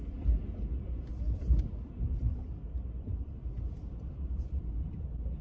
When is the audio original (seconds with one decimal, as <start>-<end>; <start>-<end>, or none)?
0.0-5.4